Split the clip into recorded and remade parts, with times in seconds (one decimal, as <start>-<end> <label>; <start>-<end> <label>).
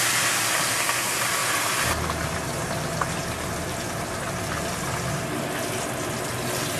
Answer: 0.0-6.8 recorded